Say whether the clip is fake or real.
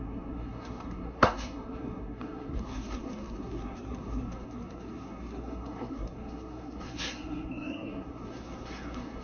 fake